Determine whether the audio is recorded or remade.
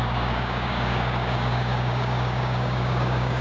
remade